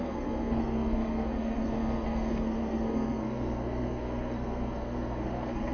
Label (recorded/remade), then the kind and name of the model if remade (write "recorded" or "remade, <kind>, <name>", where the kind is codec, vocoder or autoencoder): remade, codec, SNAC